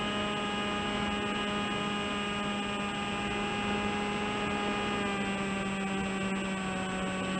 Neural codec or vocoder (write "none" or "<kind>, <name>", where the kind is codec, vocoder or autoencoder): none